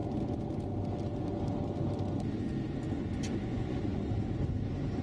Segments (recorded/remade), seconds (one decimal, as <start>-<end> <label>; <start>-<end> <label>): 0.0-3.4 recorded; 3.4-4.0 remade; 4.0-5.0 recorded